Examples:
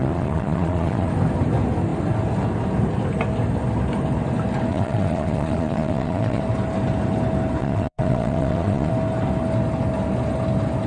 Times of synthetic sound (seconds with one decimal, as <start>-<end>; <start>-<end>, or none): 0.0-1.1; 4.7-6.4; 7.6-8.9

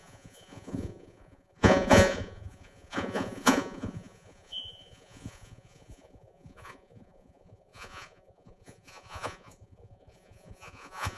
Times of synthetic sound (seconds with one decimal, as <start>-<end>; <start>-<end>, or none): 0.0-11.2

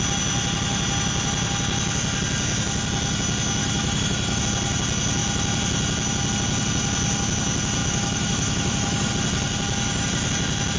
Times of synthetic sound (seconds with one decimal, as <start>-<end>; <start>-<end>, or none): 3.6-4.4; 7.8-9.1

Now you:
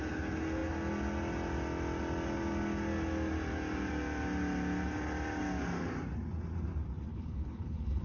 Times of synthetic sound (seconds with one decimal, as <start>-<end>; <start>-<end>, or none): 7.1-8.0